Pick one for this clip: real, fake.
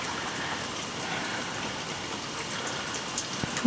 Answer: real